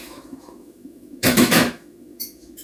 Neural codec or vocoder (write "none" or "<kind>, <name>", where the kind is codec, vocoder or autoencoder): autoencoder, DAC-VAE